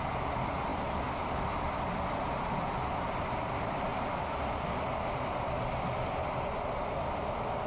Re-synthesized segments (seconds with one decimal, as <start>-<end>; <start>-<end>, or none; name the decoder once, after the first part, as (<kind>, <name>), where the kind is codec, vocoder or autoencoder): 0.0-7.7 (vocoder, BigVGAN v2)